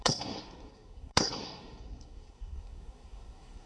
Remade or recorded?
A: remade